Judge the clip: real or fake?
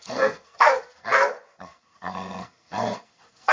fake